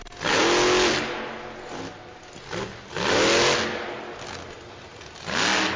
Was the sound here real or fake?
real